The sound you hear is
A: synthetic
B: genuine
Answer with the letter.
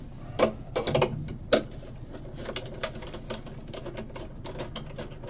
B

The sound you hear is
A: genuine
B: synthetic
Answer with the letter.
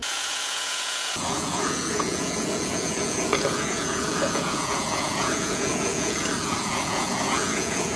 B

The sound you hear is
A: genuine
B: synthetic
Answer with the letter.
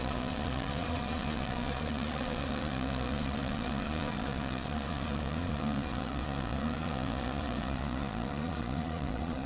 B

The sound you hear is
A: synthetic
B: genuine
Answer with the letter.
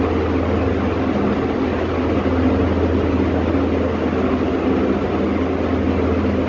B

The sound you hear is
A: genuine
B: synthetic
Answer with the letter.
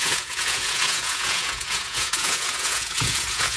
B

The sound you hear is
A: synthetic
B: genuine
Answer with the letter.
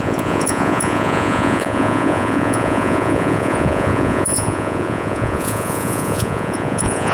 A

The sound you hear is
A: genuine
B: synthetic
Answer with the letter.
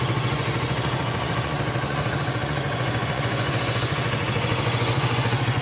B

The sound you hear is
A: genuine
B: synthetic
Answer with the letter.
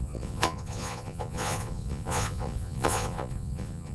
B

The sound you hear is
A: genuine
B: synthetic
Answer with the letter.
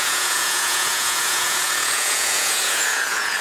B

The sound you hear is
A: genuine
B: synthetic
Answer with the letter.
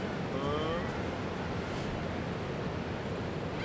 A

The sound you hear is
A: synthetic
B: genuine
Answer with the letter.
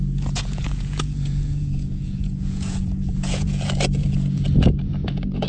A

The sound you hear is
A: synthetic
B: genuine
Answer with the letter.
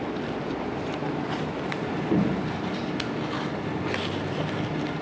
B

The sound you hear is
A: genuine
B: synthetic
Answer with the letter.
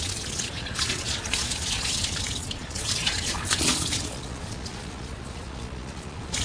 B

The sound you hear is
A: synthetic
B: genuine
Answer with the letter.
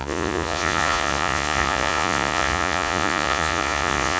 A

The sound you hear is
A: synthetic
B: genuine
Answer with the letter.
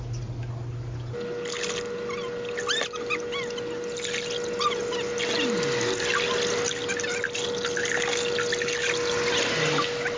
B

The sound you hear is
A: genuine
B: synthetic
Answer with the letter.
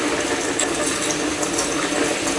A